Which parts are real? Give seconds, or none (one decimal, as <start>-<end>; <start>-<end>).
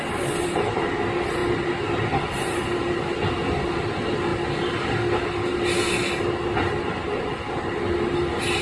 0.0-8.6